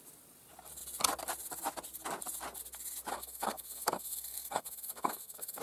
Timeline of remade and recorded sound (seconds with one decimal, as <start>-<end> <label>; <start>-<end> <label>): 0.0-3.1 recorded; 3.1-5.6 remade